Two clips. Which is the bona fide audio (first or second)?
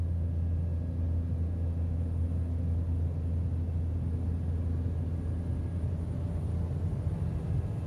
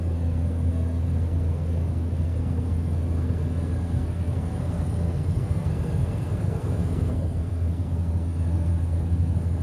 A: first